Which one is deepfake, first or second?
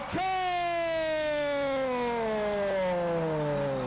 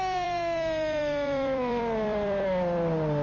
second